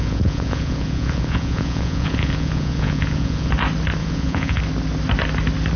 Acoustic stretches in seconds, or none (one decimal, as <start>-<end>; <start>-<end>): 3.5-4.0; 4.6-5.8